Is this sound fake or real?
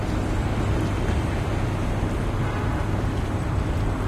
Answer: real